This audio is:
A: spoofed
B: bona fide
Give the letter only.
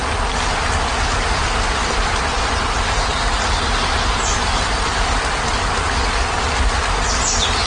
B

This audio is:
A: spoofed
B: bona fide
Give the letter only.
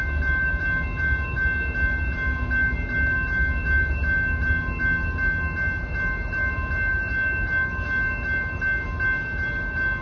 B